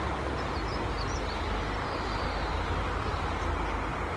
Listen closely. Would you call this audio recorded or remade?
recorded